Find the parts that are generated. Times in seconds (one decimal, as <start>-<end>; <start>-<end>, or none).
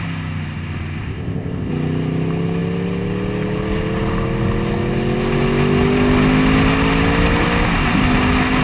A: 1.0-1.7